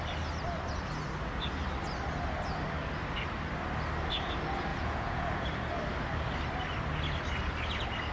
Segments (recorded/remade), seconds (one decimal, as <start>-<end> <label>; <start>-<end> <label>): 0.0-4.7 recorded; 4.7-5.5 remade; 5.5-8.1 recorded